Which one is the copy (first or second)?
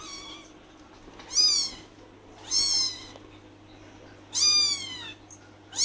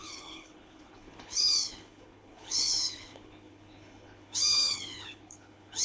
second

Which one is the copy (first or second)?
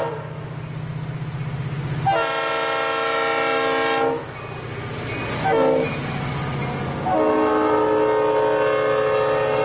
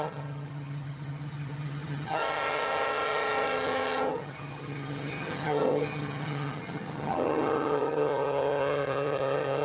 second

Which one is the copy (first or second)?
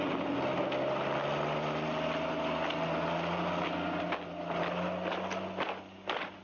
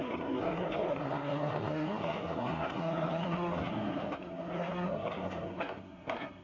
second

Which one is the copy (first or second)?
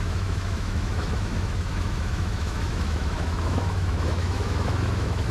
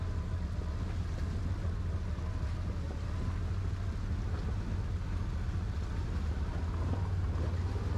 first